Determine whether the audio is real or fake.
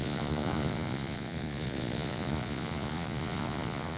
fake